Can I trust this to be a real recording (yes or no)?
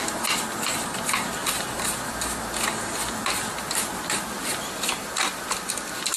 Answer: yes